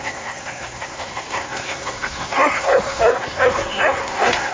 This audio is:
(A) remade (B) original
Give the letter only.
A